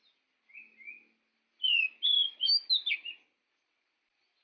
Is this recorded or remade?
recorded